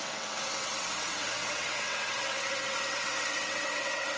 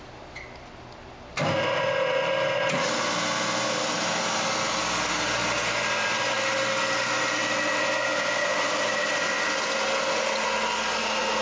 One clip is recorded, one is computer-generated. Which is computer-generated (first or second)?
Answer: first